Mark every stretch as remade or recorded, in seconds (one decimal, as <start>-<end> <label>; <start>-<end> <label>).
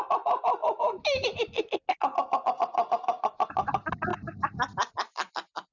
0.0-4.1 recorded; 4.1-5.3 remade; 5.3-5.7 recorded